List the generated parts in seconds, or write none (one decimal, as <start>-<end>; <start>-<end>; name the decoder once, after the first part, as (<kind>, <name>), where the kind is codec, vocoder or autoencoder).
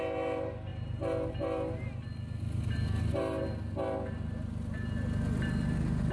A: none